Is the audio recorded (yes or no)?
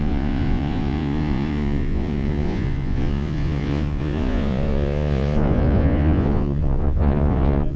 no